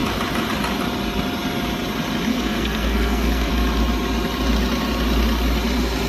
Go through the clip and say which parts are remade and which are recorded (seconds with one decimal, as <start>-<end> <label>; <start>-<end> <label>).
0.0-2.3 recorded; 2.3-3.5 remade; 3.5-6.1 recorded